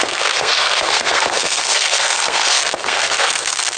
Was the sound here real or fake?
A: fake